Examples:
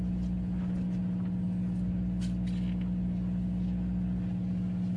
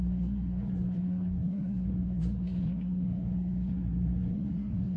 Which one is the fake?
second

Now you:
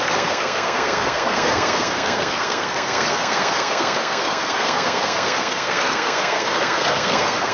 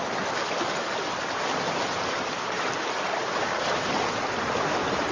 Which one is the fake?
first